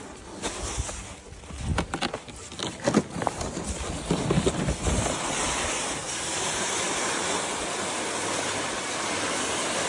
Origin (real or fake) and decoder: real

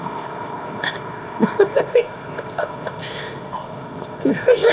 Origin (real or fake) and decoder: fake, codec, ZipCodec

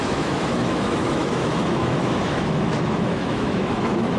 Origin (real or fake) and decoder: fake, autoencoder, DAC-VAE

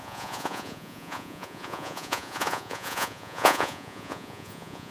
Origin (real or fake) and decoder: fake, vocoder, Vocos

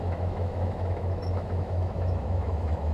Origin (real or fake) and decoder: fake, autoencoder, DAC-VAE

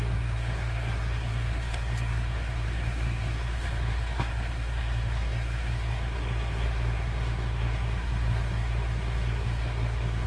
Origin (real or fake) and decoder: fake, codec, SNAC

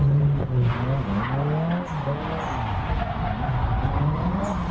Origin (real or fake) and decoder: real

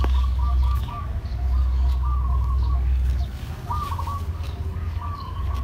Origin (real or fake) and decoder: fake, codec, DAC